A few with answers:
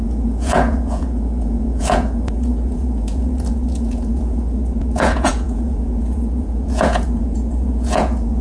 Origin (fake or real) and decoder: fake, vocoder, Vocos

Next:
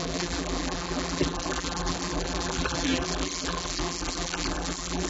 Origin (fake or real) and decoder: fake, vocoder, BigVGAN v2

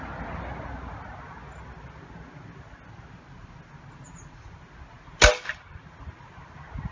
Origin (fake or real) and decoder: real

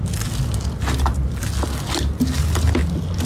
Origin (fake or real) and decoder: real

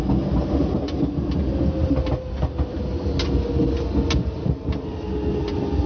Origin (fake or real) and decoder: real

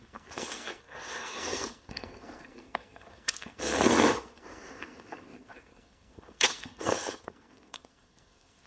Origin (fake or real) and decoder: fake, codec, SNAC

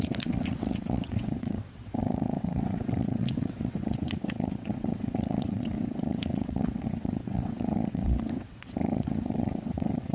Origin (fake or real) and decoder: fake, vocoder, WaveNeXt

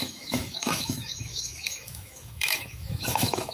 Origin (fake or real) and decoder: fake, autoencoder, DAC-VAE